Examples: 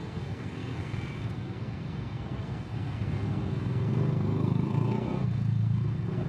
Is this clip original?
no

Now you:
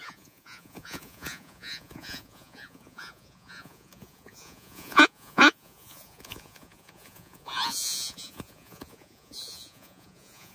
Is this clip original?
no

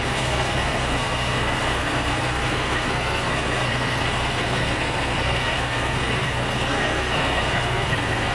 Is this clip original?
no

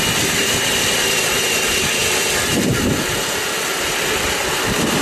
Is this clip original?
yes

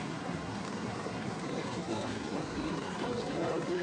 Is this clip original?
no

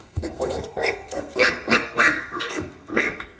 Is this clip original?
no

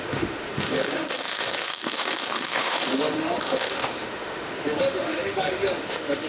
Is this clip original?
no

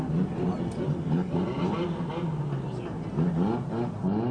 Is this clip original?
yes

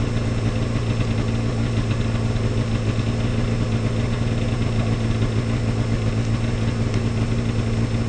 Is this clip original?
yes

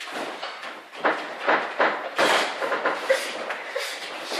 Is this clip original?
yes